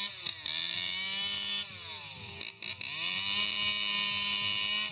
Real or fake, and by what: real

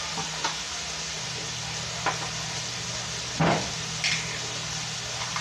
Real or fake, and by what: real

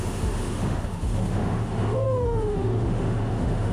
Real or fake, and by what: fake, autoencoder, DAC-VAE